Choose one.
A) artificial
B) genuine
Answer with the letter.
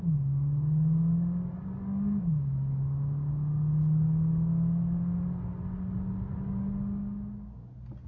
B